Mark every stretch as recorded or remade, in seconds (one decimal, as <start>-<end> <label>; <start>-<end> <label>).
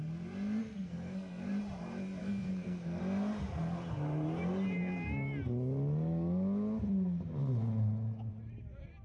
0.0-0.6 recorded; 0.6-1.5 remade; 1.5-2.2 recorded; 2.2-3.0 remade; 3.0-9.0 recorded